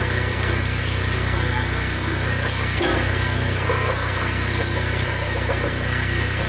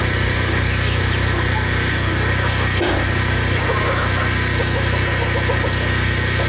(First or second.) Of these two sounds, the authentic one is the second